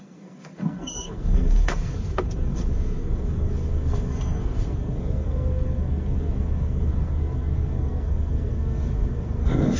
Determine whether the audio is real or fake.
fake